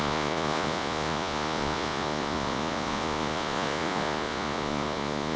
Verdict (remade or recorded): remade